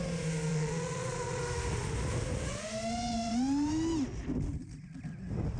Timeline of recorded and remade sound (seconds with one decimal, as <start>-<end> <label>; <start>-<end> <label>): 0.0-0.5 recorded; 0.5-1.4 remade; 1.4-5.6 recorded

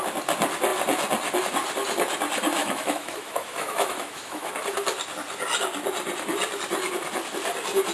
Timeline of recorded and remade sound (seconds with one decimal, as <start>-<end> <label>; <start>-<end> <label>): 0.0-2.6 recorded; 2.6-4.5 remade; 4.5-7.9 recorded

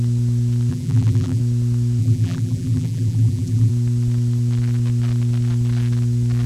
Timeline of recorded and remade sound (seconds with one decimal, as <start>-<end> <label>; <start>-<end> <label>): 0.0-0.7 recorded; 0.7-1.4 remade; 1.4-2.0 recorded; 2.0-3.7 remade; 3.7-6.5 recorded

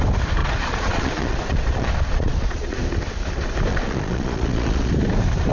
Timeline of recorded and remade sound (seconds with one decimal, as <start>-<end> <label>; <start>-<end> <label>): 0.0-0.4 recorded; 0.4-2.8 remade; 2.8-3.7 recorded; 3.7-4.9 remade; 4.9-5.5 recorded